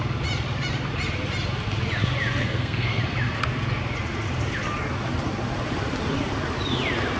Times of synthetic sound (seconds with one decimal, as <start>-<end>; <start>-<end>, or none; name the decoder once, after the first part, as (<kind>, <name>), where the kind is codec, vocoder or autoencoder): 2.4-3.0 (codec, SNAC)